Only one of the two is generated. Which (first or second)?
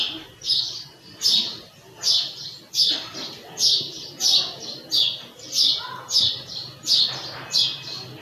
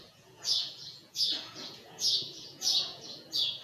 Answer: second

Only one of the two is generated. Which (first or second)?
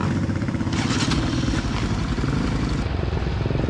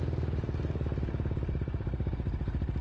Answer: second